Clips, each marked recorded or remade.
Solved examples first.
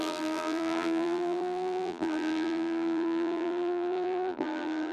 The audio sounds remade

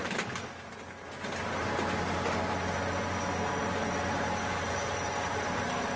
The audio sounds recorded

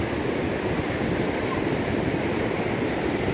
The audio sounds recorded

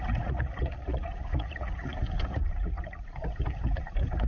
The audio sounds remade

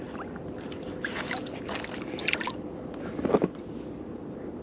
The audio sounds recorded